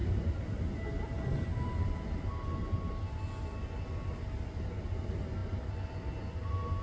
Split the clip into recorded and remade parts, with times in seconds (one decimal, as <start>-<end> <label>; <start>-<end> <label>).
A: 0.0-6.8 recorded